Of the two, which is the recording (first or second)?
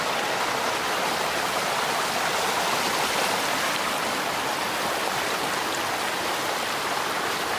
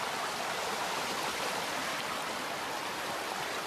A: first